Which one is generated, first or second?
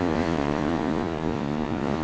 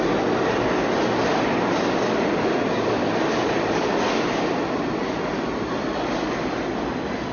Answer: first